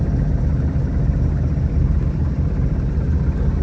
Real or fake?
real